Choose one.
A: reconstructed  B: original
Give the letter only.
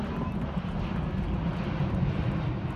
B